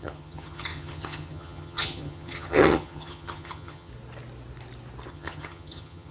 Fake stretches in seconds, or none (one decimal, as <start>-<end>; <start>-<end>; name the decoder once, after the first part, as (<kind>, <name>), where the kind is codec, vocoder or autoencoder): 0.0-3.9 (vocoder, HiFi-GAN); 5.1-6.1